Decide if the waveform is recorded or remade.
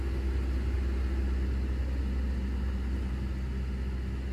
recorded